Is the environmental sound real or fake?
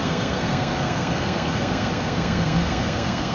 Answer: fake